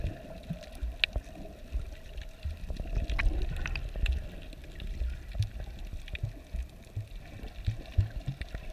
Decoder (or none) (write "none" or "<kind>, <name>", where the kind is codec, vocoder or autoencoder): none